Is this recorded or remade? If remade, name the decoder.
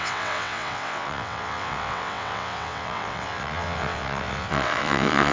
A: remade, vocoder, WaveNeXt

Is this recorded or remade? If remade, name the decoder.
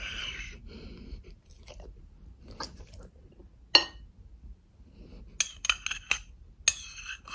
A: recorded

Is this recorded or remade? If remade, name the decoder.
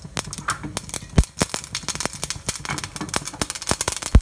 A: recorded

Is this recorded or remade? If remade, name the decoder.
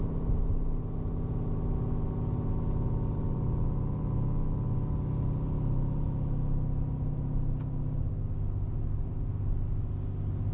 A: recorded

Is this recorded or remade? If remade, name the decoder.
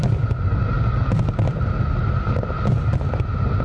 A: recorded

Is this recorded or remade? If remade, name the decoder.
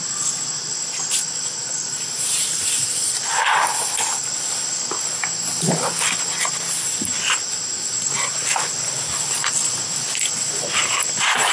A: recorded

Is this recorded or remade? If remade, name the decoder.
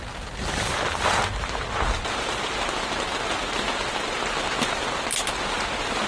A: recorded